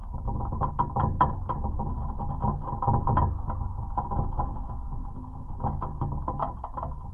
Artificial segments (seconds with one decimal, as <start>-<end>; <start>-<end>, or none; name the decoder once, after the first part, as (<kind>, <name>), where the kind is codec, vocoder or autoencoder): none